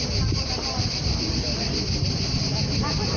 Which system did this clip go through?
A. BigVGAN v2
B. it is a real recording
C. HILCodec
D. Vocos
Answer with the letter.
A